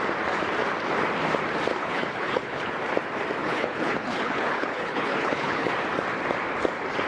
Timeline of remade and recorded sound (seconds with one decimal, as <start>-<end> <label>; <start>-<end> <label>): 0.0-1.7 recorded; 1.7-2.7 remade; 2.7-3.4 recorded; 3.4-5.7 remade; 5.7-7.1 recorded